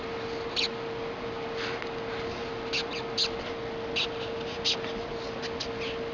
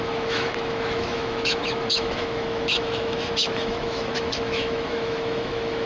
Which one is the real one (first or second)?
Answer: first